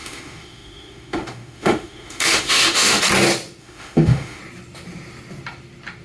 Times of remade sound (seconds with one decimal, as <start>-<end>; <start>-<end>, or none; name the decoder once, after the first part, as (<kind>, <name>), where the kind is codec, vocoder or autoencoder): 0.0-3.0 (autoencoder, DAC-VAE); 3.6-4.4